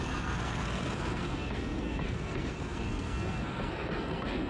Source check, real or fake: fake